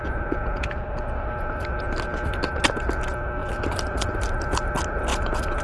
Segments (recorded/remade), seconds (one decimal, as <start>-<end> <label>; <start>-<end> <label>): 0.0-0.7 remade; 0.7-5.1 recorded; 5.1-5.6 remade